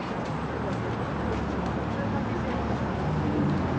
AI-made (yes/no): no